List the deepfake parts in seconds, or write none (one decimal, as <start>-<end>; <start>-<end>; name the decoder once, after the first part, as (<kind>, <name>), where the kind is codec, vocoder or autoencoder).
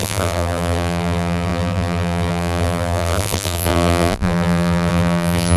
0.0-5.6 (vocoder, BigVGAN v2)